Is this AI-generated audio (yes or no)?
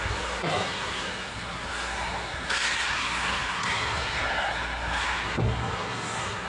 yes